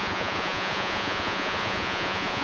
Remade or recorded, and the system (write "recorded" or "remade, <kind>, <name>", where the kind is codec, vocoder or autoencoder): remade, vocoder, Vocos